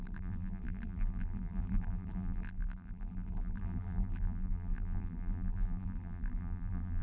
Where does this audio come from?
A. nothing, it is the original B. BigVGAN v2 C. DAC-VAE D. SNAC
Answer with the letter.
B